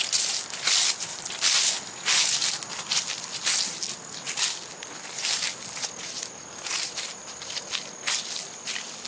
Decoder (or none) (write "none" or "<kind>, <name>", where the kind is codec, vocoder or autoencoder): none